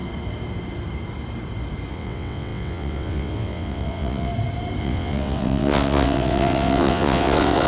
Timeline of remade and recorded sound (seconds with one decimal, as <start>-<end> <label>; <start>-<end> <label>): 0.0-1.9 recorded; 1.9-4.3 remade; 4.3-4.8 recorded; 4.8-7.7 remade